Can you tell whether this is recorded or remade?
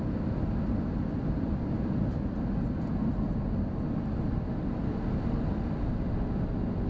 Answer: recorded